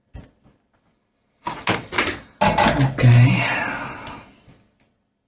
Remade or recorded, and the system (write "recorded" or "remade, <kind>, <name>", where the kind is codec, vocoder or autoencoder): recorded